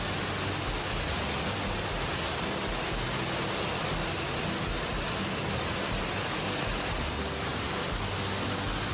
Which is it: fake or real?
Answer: real